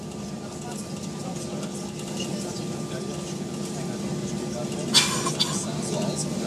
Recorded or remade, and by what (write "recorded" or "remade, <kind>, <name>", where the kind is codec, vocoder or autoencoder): recorded